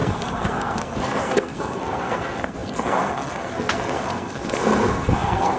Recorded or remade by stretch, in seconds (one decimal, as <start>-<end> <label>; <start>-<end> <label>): 0.0-5.6 remade